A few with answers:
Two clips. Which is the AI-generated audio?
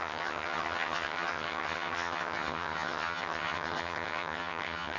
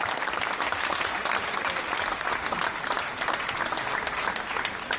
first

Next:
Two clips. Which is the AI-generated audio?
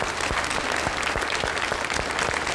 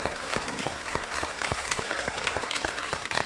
second